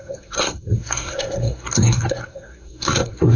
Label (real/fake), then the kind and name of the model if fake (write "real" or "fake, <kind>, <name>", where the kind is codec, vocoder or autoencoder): fake, codec, SNAC